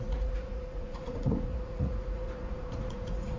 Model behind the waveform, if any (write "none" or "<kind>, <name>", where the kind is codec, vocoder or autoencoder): vocoder, Vocos